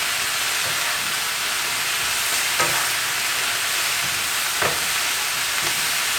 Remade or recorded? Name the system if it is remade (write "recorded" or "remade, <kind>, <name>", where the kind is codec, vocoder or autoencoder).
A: recorded